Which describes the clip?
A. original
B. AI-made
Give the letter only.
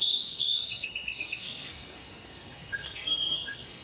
B